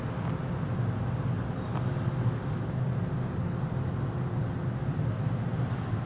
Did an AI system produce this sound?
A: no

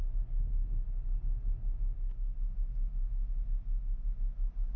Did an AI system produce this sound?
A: no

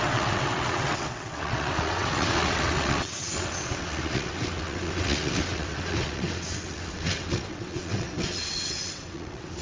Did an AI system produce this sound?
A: yes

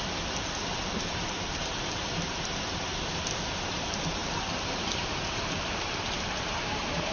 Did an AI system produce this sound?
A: yes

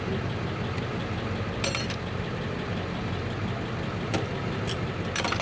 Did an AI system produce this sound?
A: no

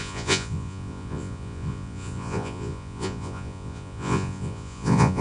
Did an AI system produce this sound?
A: yes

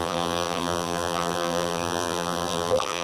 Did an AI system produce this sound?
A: yes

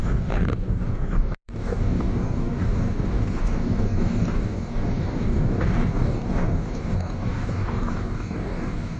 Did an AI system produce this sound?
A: yes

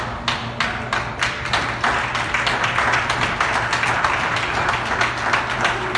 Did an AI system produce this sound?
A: no